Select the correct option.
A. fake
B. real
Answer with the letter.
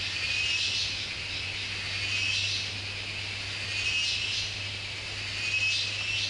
B